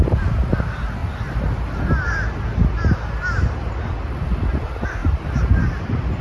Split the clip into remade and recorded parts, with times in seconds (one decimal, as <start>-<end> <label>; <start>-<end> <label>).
0.0-6.2 recorded